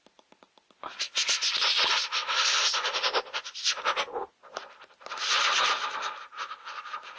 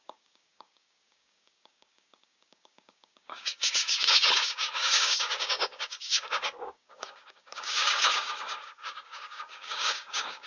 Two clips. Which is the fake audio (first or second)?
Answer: second